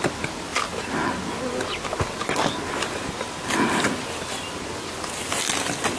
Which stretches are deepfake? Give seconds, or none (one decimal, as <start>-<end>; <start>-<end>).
none